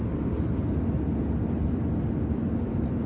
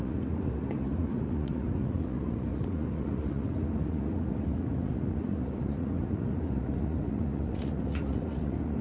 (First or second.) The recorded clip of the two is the first